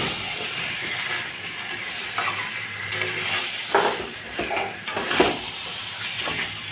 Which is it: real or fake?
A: real